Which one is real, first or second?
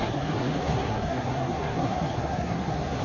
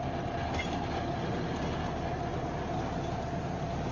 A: second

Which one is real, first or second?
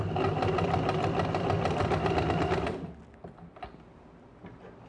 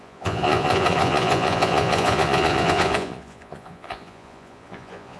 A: first